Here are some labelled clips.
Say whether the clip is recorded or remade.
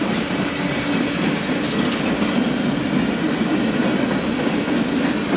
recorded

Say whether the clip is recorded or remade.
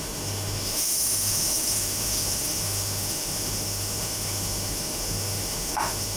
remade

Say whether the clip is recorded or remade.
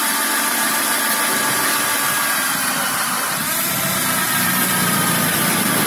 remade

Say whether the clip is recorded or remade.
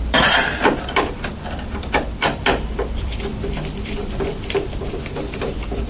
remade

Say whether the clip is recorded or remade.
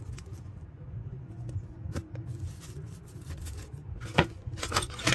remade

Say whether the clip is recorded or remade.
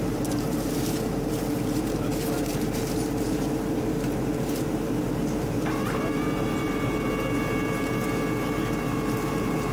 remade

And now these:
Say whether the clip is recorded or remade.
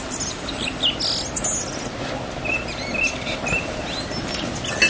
recorded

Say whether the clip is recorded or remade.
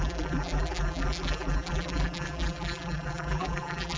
remade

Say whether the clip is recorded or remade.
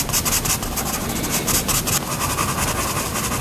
recorded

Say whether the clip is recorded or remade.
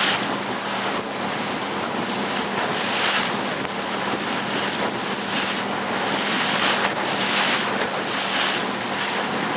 recorded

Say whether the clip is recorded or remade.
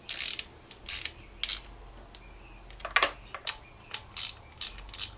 recorded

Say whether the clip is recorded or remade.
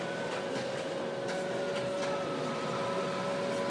recorded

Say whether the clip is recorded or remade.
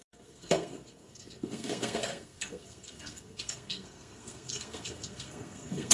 remade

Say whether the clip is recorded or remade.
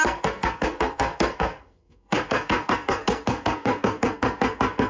remade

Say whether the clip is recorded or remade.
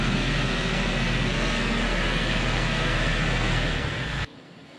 remade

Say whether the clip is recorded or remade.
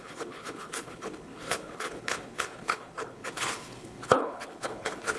remade